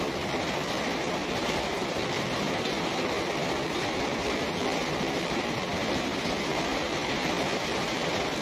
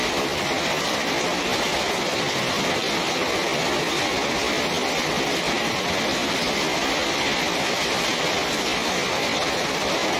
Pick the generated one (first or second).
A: first